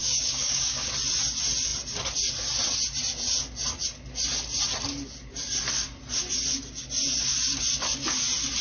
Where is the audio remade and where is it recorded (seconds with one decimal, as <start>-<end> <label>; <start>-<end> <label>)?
0.0-0.9 remade; 0.9-8.6 recorded